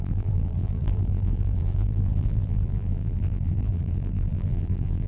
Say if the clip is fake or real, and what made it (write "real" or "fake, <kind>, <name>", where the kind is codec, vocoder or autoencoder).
fake, vocoder, BigVGAN v2